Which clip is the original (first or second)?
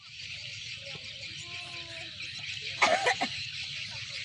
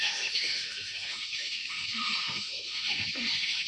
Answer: first